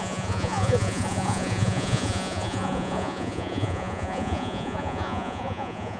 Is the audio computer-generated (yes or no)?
yes